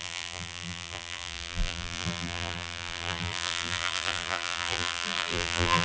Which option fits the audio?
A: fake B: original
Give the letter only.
A